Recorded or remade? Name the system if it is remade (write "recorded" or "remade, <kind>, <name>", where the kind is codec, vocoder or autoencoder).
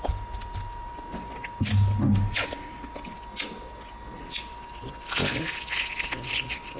recorded